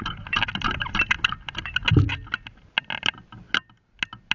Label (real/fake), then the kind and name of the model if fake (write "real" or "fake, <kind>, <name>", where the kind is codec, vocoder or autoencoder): real